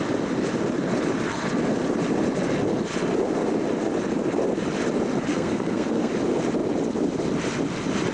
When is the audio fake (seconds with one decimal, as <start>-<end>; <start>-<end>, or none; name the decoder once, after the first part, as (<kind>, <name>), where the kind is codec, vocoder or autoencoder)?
5.3-6.1 (codec, SNAC)